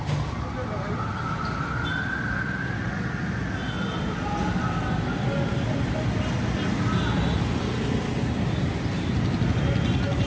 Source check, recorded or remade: recorded